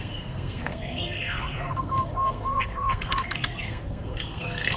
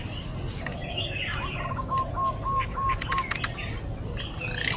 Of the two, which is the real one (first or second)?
second